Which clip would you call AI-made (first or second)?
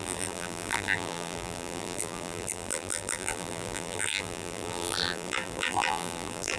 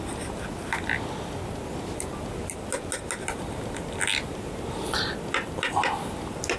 first